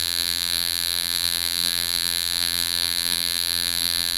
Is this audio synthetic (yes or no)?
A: yes